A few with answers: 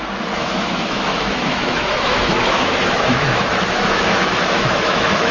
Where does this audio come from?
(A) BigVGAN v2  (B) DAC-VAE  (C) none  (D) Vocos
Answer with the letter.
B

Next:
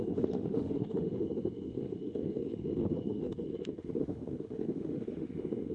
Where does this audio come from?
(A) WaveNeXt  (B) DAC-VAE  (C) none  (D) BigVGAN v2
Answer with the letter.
B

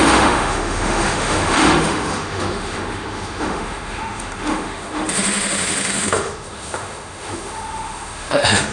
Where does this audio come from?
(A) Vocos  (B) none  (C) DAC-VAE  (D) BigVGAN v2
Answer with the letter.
C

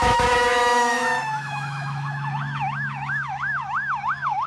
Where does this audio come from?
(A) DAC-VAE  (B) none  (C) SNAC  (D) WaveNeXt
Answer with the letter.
A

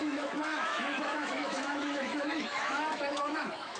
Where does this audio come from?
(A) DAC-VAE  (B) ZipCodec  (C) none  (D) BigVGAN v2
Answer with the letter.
A